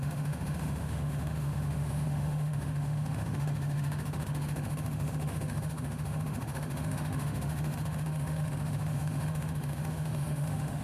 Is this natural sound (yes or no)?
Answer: no